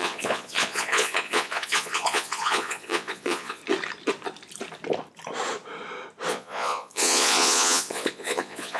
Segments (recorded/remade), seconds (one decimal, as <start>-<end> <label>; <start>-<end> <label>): 0.0-3.6 remade; 3.6-6.3 recorded; 6.3-8.8 remade